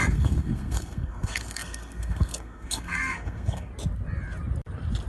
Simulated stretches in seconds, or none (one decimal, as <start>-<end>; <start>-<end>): 0.0-3.7